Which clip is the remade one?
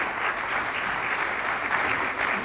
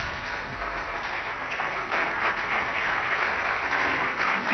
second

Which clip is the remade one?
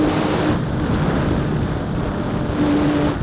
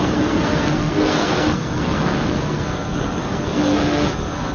second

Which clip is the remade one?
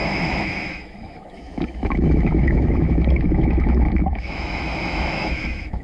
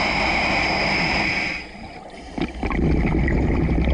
first